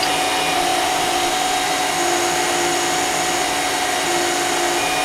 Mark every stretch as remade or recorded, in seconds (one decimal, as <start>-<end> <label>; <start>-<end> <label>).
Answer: 0.0-5.0 recorded